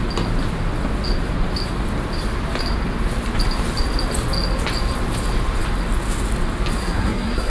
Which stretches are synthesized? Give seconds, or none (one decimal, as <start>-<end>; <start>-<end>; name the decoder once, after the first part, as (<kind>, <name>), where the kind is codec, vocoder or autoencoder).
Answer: 6.8-7.5 (codec, SNAC)